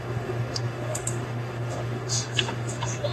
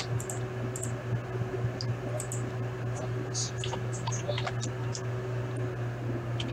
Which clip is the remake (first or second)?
first